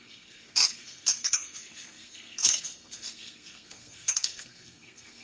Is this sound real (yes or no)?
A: no